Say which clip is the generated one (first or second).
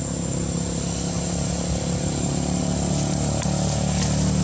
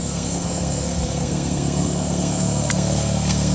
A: second